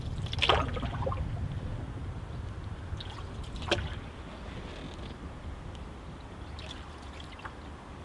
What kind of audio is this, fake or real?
real